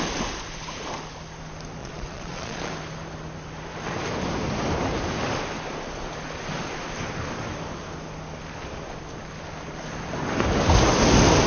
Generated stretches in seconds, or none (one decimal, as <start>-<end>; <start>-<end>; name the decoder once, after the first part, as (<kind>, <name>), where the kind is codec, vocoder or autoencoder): 1.8-2.7 (vocoder, Vocos)